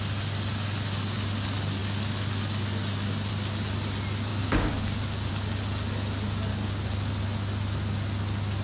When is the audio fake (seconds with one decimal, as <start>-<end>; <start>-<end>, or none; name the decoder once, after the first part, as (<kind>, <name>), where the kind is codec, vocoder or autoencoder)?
4.3-5.3 (codec, DAC); 6.5-7.0